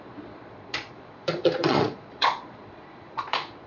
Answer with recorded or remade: remade